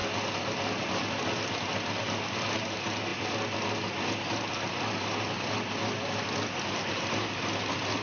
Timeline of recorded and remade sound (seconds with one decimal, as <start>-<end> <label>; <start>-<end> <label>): 0.0-8.0 recorded